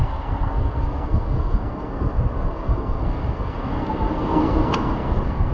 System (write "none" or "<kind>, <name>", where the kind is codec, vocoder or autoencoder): codec, SNAC